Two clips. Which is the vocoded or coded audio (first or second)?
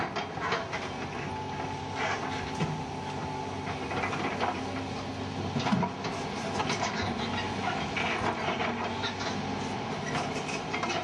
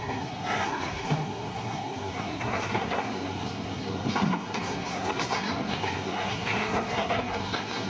second